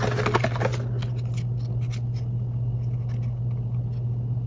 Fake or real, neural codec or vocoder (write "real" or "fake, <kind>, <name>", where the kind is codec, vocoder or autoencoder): real